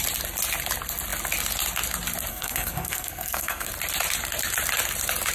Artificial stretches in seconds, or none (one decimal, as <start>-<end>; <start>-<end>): 2.3-3.7